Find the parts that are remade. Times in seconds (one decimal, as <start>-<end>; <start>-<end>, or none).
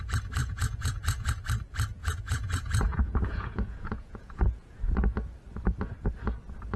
0.4-1.3; 2.0-4.8